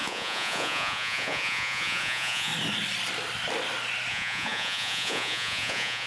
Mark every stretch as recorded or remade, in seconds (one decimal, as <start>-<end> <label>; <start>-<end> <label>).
0.0-2.5 remade; 2.5-4.1 recorded; 4.1-6.1 remade